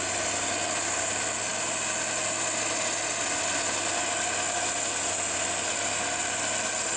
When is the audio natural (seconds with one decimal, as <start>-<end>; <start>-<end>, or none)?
0.0-7.0